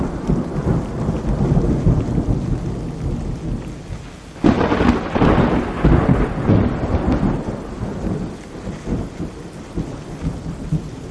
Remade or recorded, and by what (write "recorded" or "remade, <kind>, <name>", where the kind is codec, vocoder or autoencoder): recorded